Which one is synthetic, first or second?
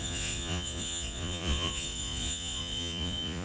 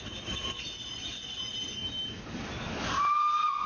first